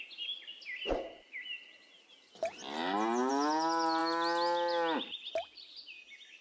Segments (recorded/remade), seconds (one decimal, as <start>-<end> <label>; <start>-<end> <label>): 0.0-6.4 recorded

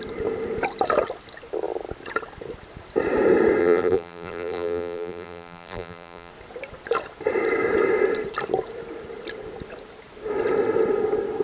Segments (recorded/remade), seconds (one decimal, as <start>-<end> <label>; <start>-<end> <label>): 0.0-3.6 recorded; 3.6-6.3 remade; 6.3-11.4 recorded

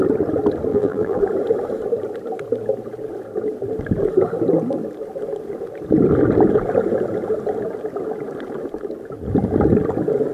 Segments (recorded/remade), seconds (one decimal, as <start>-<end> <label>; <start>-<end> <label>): 0.0-0.7 recorded; 0.7-1.2 remade; 1.2-10.3 recorded

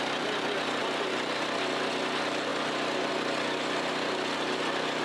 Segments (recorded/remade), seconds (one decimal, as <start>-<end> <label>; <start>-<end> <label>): 0.0-0.8 recorded; 0.8-1.6 remade; 1.6-2.5 recorded; 2.5-3.1 remade; 3.1-5.0 recorded